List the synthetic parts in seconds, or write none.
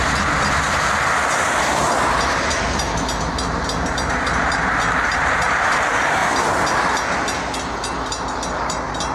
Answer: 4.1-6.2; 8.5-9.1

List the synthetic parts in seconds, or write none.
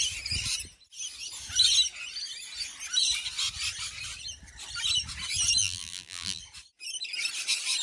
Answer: 5.6-6.4